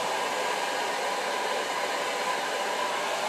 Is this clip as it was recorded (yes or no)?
yes